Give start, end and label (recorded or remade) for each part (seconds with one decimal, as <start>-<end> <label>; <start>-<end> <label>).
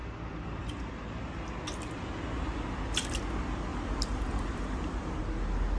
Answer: 0.0-0.9 remade; 0.9-3.7 recorded; 3.7-5.2 remade; 5.2-5.8 recorded